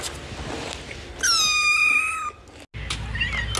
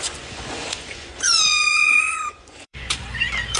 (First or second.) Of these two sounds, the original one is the first